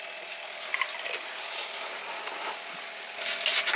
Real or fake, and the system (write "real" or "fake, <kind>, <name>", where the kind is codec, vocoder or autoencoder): real